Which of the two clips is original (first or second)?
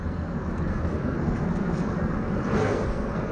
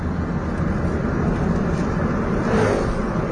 second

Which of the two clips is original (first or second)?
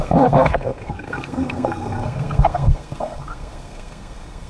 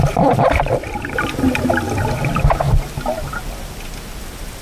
second